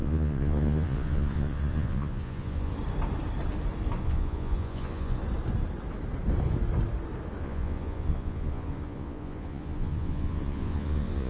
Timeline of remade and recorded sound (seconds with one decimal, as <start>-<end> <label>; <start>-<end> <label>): 0.0-2.7 remade; 2.7-4.0 recorded; 4.0-5.2 remade; 5.2-7.4 recorded; 7.4-11.3 remade